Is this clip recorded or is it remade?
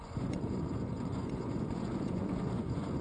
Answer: remade